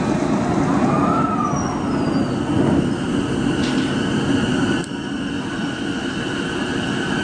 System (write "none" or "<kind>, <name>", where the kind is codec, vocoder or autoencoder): none